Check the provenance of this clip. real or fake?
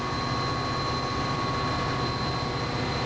real